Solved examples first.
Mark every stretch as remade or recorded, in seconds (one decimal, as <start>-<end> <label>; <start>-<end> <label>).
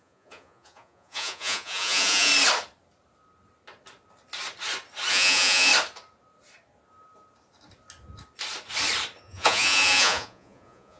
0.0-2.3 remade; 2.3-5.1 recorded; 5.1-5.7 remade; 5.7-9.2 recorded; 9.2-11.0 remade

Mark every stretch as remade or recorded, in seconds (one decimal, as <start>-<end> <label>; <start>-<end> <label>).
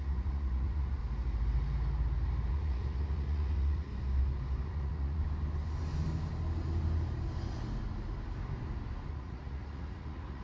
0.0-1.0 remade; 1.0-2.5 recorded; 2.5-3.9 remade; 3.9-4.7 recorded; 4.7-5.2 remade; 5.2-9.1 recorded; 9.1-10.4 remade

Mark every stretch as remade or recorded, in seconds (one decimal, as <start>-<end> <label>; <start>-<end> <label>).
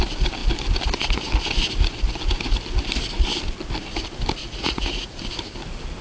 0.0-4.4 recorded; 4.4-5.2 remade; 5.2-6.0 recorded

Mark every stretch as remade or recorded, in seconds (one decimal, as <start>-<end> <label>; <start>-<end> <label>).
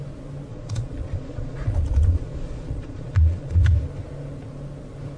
0.0-0.5 recorded; 0.5-3.6 remade; 3.6-5.2 recorded